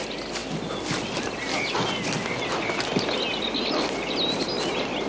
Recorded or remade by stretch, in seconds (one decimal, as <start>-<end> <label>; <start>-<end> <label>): 0.0-5.1 recorded